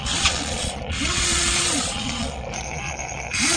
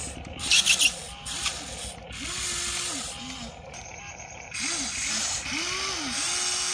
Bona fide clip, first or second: second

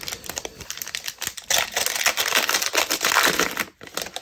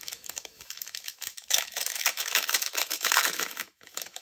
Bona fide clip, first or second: first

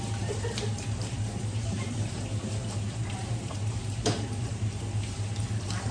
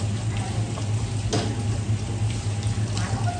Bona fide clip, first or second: second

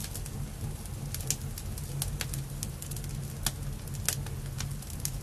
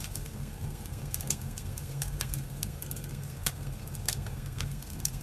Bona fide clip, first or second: first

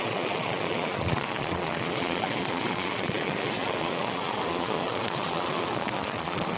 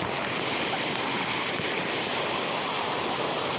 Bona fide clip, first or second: second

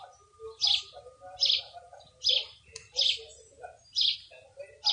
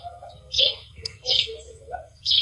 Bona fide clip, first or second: first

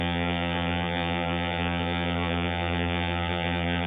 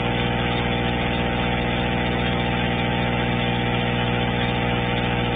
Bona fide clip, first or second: second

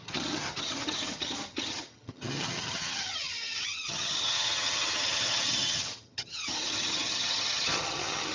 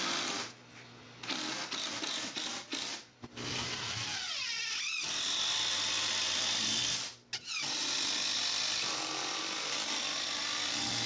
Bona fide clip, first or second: second